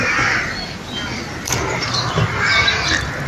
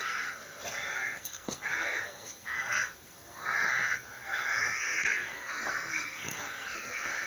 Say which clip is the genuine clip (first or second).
first